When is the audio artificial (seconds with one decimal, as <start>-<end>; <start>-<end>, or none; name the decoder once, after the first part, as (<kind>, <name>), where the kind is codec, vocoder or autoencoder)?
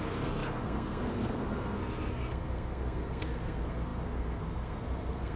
0.0-5.4 (codec, SNAC)